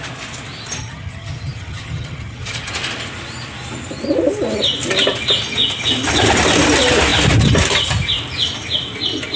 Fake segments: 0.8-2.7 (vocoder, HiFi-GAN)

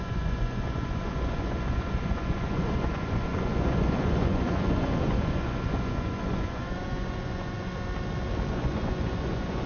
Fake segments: 0.0-7.7 (vocoder, Vocos); 8.5-9.7

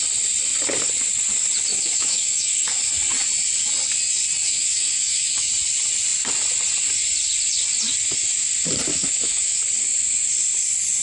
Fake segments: 1.7-2.8 (autoencoder, DAC-VAE); 4.4-5.5; 8.9-9.6

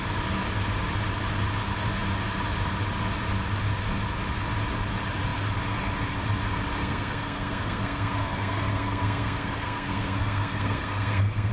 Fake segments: 6.8-11.5 (codec, SNAC)

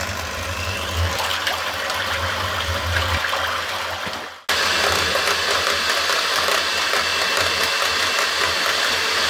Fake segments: none

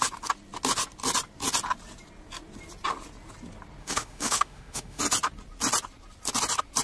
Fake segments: 3.8-5.0 (autoencoder, DAC-VAE)